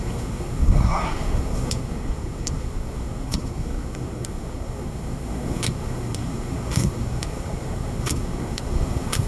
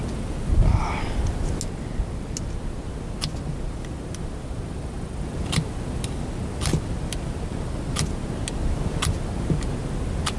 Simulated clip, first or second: first